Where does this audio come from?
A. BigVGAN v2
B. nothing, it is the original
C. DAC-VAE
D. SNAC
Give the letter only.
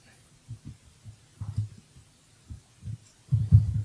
B